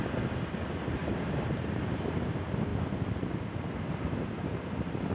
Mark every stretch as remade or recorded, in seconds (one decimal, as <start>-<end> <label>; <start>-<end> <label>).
0.0-1.0 recorded; 1.0-2.3 remade; 2.3-5.1 recorded